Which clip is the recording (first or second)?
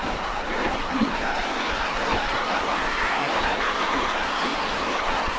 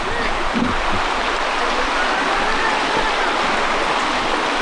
second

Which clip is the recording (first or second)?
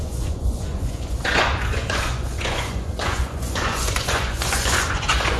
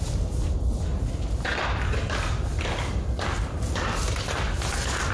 second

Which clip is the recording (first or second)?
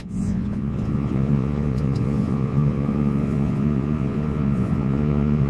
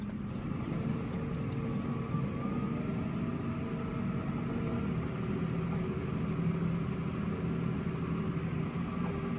second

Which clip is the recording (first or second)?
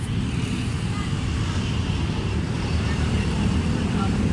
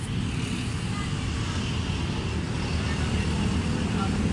second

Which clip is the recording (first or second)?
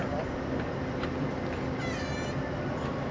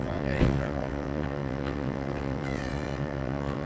first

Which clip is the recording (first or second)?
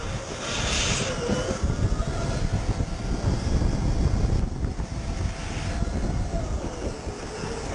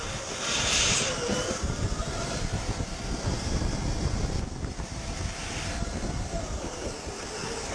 first